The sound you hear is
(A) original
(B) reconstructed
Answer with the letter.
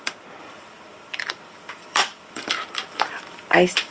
B